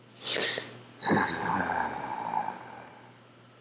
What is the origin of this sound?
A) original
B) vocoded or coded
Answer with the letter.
A